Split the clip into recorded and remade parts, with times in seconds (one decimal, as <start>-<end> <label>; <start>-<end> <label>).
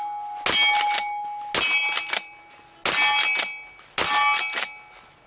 0.0-5.3 recorded